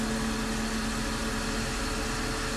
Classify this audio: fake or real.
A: real